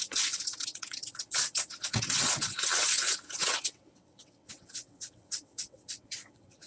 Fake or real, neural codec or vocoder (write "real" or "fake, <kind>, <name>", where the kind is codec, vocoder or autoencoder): fake, vocoder, WaveNeXt